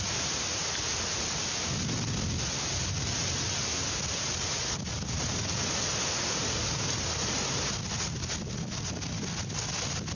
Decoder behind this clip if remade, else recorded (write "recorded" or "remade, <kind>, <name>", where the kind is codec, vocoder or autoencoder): recorded